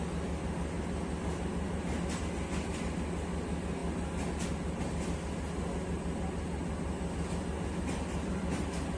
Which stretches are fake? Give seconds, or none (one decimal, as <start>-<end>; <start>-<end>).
none